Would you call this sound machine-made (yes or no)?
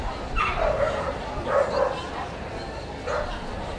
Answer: no